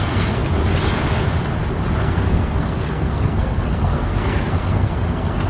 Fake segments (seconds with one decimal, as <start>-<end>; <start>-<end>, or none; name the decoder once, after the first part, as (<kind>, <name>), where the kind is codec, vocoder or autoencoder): 0.0-0.4 (codec, SNAC); 2.0-5.5